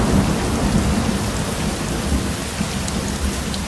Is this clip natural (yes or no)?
yes